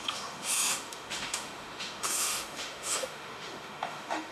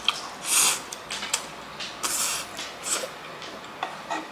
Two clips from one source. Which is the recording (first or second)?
second